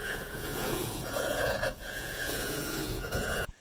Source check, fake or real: fake